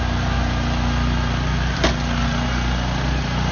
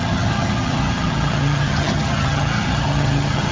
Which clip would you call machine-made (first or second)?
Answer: second